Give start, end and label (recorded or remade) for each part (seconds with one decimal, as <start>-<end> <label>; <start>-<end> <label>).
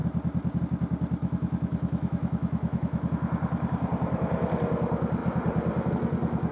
0.0-1.2 recorded; 1.2-3.1 remade; 3.1-6.5 recorded